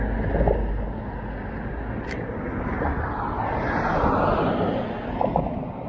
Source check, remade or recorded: recorded